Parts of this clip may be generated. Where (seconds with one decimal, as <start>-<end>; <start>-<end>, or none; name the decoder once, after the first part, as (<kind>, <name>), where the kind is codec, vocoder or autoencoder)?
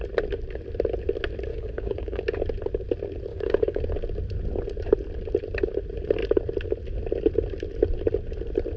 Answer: 1.5-2.2 (codec, DAC); 3.3-3.8